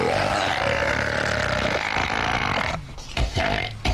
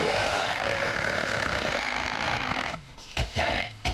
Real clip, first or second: first